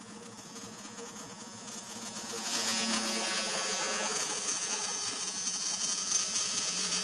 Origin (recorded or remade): remade